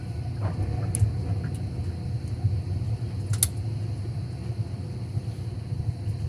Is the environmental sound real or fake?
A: real